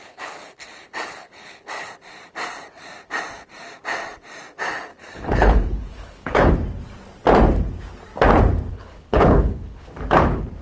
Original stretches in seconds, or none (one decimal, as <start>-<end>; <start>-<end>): 1.9-4.9; 6.5-8.7; 9.9-10.6